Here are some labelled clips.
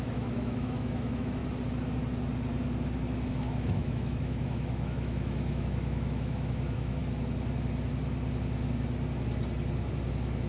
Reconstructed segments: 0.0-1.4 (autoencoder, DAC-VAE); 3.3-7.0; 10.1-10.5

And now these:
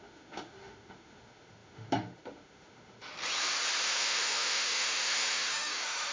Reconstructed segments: 0.0-3.1 (autoencoder, DAC-VAE); 3.8-6.1

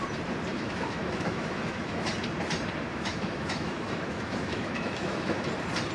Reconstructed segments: 0.5-2.1 (autoencoder, DAC-VAE); 2.9-5.5

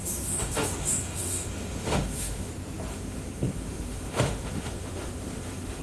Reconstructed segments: 0.0-2.5 (autoencoder, DAC-VAE); 2.9-5.8

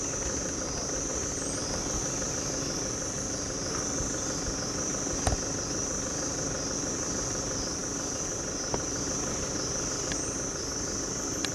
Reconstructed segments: none

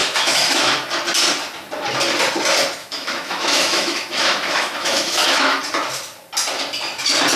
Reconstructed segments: 0.0-0.7 (autoencoder, DAC-VAE); 2.8-5.6

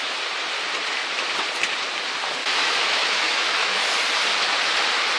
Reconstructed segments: 2.4-3.9 (autoencoder, DAC-VAE)